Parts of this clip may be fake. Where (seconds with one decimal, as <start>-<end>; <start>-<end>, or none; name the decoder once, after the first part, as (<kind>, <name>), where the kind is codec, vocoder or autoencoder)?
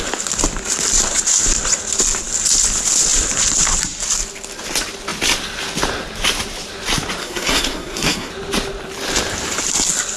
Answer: 7.2-8.3 (codec, SNAC)